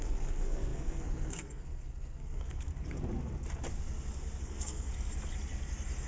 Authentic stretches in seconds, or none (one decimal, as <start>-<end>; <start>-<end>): 2.7-4.4; 4.9-6.1